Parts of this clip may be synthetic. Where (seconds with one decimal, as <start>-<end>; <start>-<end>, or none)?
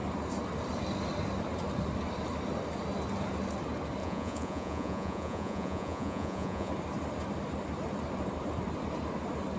4.0-6.7